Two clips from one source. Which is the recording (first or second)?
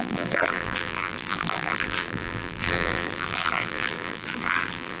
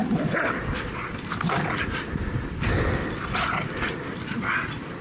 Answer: second